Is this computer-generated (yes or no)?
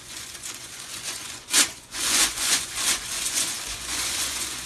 yes